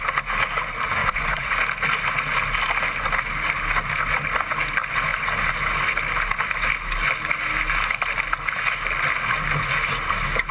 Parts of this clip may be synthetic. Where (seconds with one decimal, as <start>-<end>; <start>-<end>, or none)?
1.0-1.5